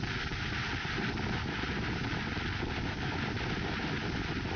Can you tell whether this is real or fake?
real